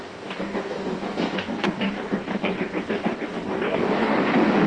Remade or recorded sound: remade